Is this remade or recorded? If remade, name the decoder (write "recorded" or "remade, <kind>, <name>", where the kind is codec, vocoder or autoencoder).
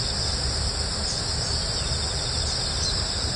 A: recorded